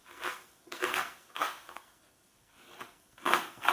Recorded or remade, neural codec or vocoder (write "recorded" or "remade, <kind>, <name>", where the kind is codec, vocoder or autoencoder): remade, codec, SNAC